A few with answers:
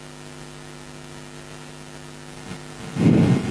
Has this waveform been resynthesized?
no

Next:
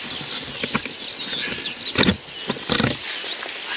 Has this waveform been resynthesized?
no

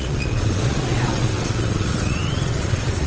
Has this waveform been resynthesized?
yes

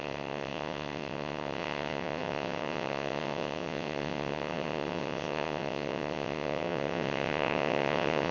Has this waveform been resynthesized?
yes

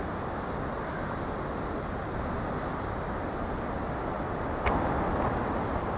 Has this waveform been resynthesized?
no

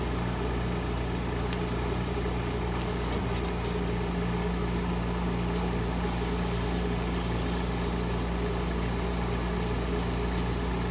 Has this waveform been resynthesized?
no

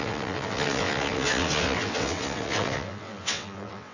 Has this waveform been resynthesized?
yes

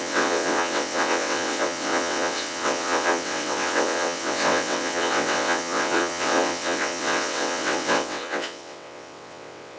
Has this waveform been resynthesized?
yes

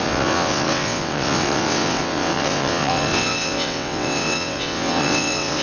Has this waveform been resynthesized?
yes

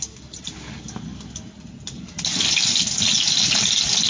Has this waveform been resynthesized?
no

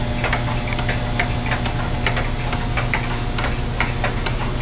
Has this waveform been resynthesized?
no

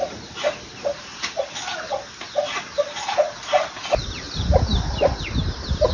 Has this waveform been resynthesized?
no